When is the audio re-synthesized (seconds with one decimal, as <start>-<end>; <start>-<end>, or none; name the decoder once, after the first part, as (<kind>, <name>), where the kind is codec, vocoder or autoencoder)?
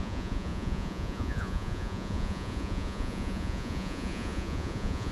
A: 0.0-5.1 (vocoder, Vocos)